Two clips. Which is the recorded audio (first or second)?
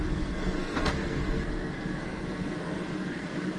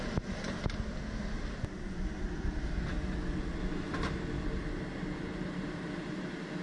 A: second